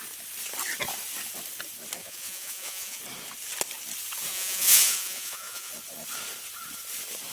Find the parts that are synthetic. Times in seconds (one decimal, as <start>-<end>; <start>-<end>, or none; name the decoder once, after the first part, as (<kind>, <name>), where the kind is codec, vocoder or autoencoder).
2.0-3.0 (vocoder, Vocos); 4.3-5.7